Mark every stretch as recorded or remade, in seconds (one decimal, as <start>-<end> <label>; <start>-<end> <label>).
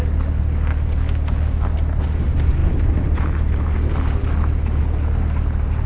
0.0-5.9 recorded